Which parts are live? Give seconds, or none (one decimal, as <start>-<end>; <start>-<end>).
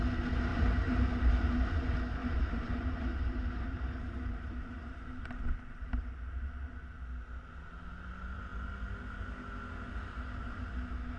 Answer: 0.0-0.5; 1.3-2.2; 6.7-11.2